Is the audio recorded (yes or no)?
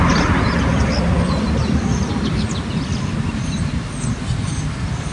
yes